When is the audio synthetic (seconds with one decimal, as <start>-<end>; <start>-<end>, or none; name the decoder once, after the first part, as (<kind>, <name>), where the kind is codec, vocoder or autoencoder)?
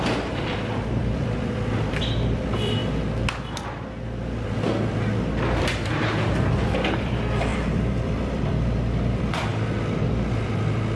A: 0.0-2.8 (vocoder, BigVGAN v2); 6.9-11.0